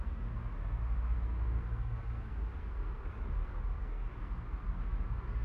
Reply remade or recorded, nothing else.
remade